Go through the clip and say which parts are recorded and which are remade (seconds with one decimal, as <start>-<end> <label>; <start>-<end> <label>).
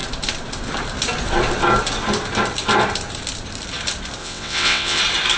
0.0-4.2 recorded; 4.2-5.0 remade; 5.0-5.4 recorded